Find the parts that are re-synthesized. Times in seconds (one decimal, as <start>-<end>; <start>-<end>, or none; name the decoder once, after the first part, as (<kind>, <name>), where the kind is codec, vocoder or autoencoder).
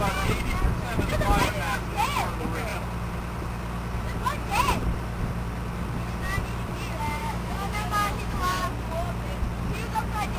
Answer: 7.2-8.6 (autoencoder, DAC-VAE)